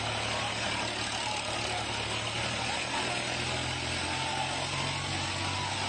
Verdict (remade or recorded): recorded